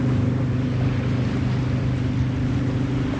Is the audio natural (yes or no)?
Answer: yes